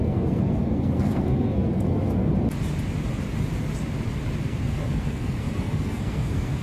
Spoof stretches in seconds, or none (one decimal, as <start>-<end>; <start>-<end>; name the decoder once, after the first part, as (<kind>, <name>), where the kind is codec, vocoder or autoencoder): 0.0-2.3 (codec, SNAC); 4.4-6.6